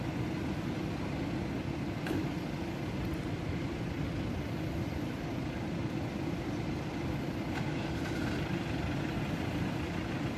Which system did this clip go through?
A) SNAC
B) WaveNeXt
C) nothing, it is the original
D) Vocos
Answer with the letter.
C